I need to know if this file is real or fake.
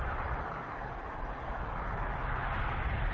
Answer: real